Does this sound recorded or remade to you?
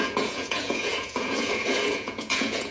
remade